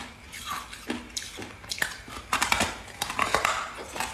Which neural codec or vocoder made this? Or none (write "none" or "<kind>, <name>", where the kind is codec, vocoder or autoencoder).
none